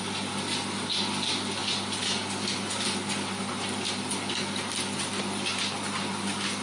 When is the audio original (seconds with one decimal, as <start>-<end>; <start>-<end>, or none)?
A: 0.0-6.6